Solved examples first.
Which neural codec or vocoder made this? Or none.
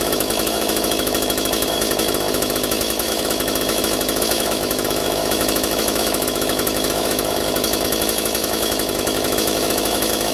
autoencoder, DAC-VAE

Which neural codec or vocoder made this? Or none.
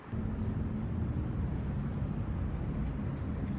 none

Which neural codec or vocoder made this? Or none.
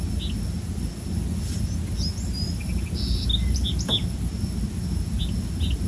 none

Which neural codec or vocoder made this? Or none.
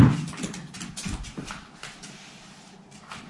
none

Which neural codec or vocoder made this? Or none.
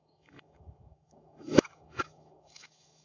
autoencoder, DAC-VAE